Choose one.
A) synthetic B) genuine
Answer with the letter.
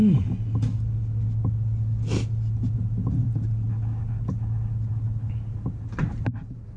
B